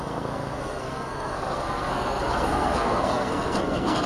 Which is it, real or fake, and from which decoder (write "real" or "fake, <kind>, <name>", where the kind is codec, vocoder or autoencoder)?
fake, codec, SNAC